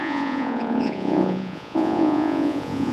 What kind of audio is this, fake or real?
fake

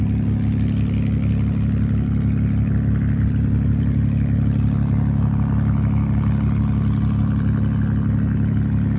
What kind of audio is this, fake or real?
real